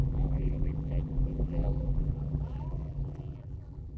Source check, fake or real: fake